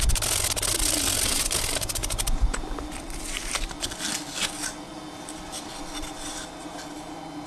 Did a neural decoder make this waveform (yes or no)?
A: no